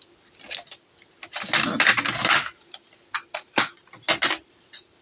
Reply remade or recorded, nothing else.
recorded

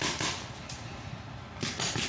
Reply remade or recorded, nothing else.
remade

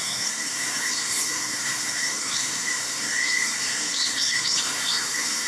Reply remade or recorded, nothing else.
remade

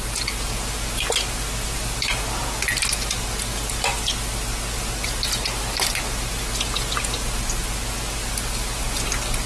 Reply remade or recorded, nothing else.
recorded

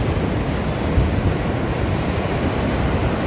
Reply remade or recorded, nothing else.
recorded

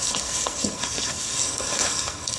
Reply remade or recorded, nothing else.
remade